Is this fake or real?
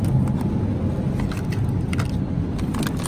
real